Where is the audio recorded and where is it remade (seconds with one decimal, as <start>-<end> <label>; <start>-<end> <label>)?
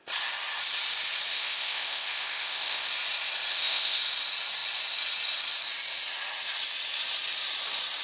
0.0-1.3 recorded; 1.3-2.9 remade; 2.9-3.5 recorded; 3.5-4.0 remade; 4.0-8.0 recorded